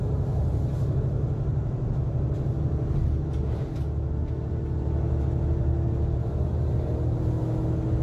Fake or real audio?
real